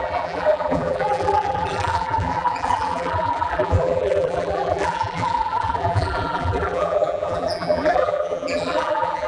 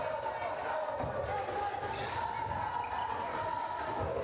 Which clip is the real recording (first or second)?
second